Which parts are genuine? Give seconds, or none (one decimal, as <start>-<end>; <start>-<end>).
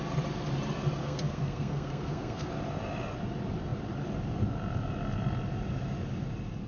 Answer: 0.0-1.0; 2.5-6.7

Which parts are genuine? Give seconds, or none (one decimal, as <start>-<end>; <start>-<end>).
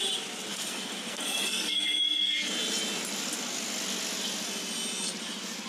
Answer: 0.0-0.5; 2.5-5.7